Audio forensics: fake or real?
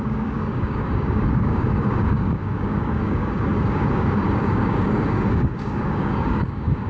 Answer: fake